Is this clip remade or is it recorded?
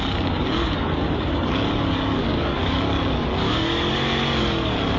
remade